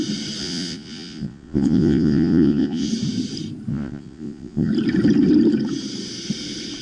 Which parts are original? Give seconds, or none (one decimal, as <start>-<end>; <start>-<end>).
0.0-0.4; 2.9-3.7; 4.7-6.8